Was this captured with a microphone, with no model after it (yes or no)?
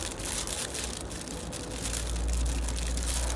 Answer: yes